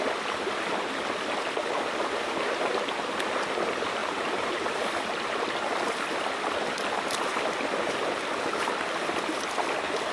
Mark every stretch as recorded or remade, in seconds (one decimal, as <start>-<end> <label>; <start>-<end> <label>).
0.0-1.6 recorded; 1.6-2.3 remade; 2.3-4.0 recorded; 4.0-4.9 remade; 4.9-10.1 recorded